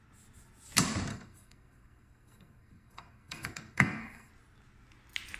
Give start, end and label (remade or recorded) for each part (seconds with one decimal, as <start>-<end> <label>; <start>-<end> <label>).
0.0-1.1 recorded; 1.1-4.3 remade; 4.3-5.4 recorded